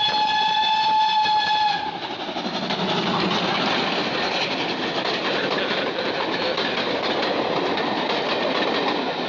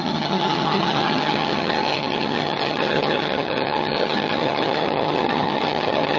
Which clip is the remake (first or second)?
second